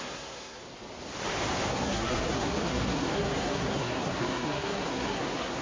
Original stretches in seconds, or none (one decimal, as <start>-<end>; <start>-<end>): 0.6-1.7